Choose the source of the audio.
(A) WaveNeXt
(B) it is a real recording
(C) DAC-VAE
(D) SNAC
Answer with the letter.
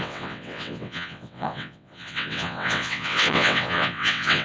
A